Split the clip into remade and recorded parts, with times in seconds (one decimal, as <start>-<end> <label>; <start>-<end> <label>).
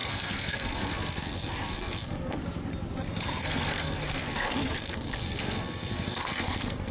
0.0-2.4 remade; 2.4-3.4 recorded; 3.4-6.9 remade